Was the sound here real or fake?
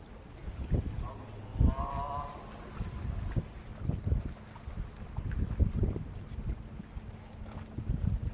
real